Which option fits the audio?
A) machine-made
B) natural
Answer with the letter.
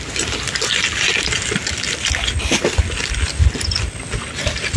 B